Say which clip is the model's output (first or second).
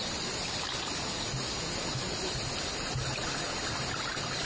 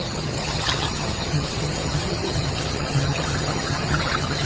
second